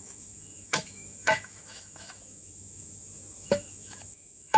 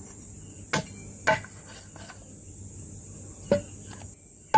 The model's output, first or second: first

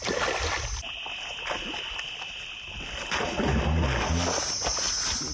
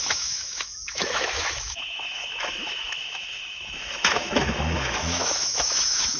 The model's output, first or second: second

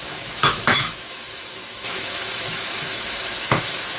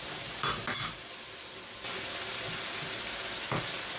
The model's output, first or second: first